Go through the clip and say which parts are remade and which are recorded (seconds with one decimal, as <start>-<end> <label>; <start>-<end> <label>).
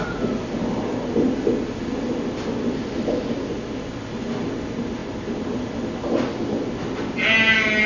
0.0-7.9 recorded